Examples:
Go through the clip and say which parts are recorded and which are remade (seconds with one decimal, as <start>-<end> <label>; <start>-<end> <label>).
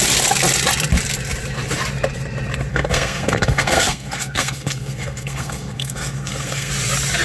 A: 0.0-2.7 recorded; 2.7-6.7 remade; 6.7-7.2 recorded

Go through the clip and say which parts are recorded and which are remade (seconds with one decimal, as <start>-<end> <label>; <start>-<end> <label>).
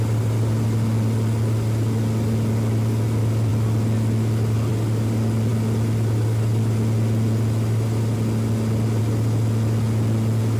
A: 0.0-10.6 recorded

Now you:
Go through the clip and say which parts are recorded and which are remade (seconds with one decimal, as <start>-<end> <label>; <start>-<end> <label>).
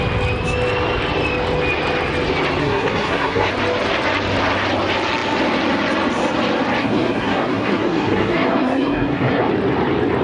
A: 0.0-2.6 recorded; 2.6-3.5 remade; 3.5-6.8 recorded; 6.8-9.4 remade; 9.4-10.2 recorded